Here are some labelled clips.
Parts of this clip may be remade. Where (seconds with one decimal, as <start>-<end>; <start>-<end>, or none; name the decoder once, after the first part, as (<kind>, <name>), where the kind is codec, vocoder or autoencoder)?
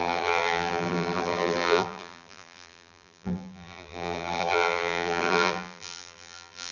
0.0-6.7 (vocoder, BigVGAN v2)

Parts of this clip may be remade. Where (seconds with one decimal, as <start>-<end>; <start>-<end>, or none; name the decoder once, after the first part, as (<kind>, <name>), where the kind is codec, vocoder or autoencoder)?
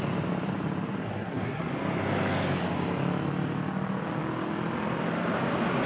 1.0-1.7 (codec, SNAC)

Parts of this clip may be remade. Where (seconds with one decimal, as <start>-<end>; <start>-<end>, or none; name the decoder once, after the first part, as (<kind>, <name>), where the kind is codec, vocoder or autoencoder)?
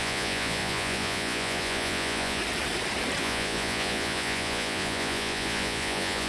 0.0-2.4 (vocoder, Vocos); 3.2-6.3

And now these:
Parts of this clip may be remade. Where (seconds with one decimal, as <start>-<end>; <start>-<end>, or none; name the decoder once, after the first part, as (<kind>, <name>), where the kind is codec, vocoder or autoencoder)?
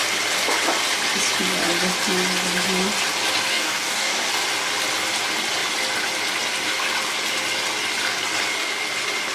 3.5-4.3 (codec, DAC)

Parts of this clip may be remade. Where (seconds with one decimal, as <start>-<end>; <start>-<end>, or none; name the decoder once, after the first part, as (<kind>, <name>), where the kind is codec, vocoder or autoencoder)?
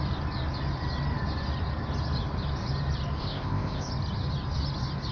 3.2-3.9 (codec, ZipCodec)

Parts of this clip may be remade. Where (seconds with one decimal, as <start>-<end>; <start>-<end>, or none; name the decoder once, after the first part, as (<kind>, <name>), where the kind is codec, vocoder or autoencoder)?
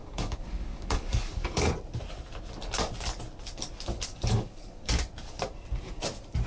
0.0-1.7 (codec, DAC); 4.1-5.0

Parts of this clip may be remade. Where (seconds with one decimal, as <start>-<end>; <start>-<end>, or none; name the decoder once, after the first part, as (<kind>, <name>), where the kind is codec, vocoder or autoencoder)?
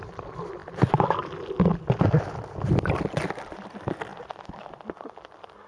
none